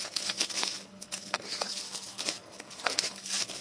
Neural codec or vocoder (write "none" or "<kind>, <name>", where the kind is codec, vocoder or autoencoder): codec, SNAC